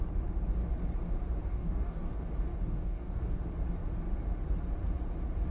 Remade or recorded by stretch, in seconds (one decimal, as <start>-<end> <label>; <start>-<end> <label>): 0.0-1.5 recorded; 1.5-2.1 remade; 2.1-2.5 recorded; 2.5-3.4 remade; 3.4-5.5 recorded